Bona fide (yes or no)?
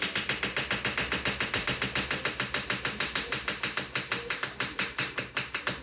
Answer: yes